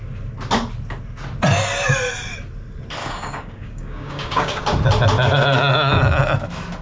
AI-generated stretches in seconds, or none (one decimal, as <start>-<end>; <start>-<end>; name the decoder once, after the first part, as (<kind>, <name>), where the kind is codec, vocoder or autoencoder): 3.0-4.6 (codec, DAC)